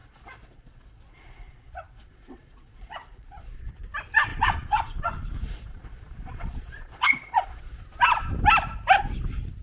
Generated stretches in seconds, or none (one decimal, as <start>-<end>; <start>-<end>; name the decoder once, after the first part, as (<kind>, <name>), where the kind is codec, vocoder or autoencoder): 0.0-3.7 (vocoder, Vocos); 4.3-7.8